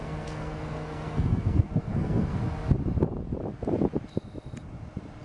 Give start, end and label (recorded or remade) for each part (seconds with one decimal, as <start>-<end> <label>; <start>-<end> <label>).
0.0-2.4 remade; 2.4-5.2 recorded